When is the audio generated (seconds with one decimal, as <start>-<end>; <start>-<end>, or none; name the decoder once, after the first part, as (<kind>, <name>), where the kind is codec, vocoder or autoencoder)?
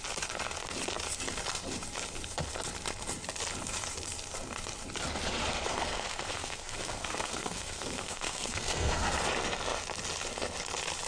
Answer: 5.7-9.2 (codec, SNAC)